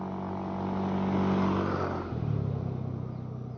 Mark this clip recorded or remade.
recorded